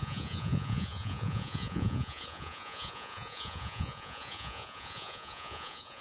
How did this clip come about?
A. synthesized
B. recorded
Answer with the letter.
A